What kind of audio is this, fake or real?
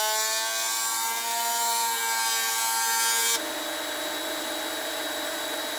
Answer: real